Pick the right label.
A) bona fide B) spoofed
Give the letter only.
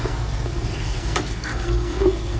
B